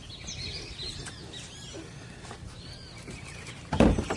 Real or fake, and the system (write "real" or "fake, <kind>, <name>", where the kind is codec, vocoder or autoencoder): real